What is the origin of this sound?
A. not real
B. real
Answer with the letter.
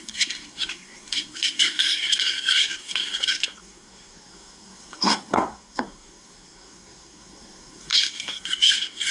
A